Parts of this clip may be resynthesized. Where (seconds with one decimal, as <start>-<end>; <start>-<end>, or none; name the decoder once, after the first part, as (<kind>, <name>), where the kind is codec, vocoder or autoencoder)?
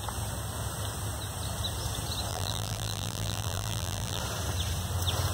2.3-4.2 (vocoder, BigVGAN v2)